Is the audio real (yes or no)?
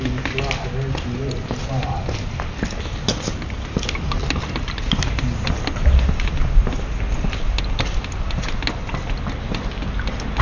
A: yes